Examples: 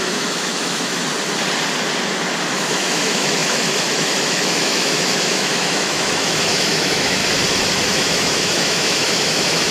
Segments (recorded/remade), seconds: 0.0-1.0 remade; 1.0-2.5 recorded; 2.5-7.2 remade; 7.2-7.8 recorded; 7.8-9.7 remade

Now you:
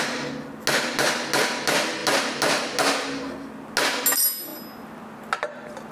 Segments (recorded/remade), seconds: 0.0-5.9 recorded

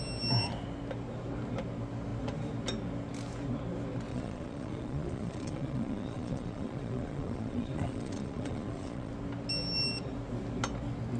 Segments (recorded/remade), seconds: 0.0-4.1 recorded; 4.1-9.1 remade; 9.1-11.2 recorded

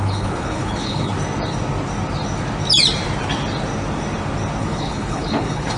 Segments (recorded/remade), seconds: 0.0-1.1 remade; 1.1-4.6 recorded; 4.6-5.8 remade

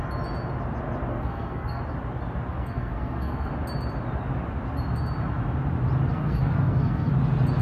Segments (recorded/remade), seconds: 0.0-1.1 recorded; 1.1-1.8 remade; 1.8-2.5 recorded; 2.5-3.5 remade; 3.5-6.1 recorded; 6.1-7.1 remade; 7.1-7.6 recorded

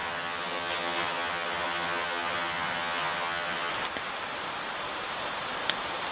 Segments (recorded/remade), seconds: 0.0-3.7 remade; 3.7-6.1 recorded

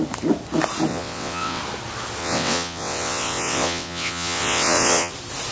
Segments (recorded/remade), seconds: 0.0-0.9 recorded; 0.9-1.6 remade; 1.6-2.2 recorded; 2.2-5.1 remade; 5.1-5.5 recorded